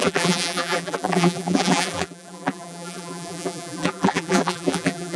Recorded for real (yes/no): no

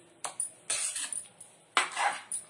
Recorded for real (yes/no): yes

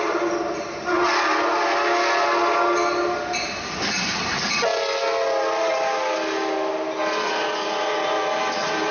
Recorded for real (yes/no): yes